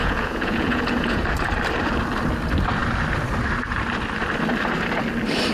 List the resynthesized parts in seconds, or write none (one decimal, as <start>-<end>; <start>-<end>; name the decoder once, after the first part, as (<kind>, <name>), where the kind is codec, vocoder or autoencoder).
0.0-1.2 (vocoder, Vocos)